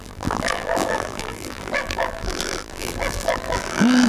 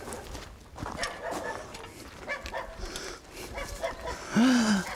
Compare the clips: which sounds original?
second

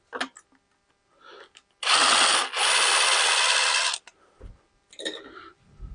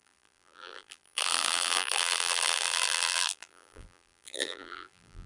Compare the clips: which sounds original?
first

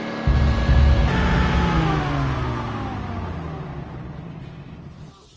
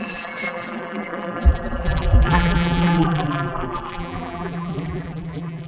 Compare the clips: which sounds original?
first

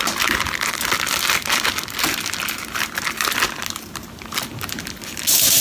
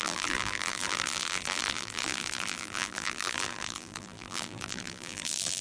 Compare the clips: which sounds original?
first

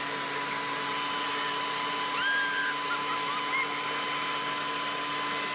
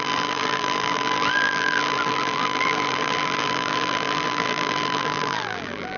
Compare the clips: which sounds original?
first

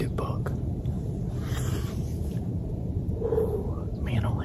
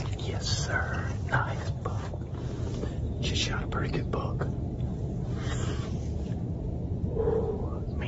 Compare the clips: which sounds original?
second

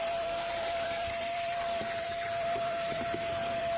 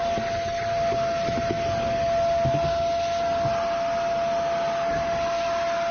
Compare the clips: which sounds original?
second